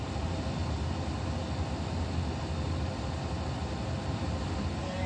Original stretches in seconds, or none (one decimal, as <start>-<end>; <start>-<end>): 0.0-5.1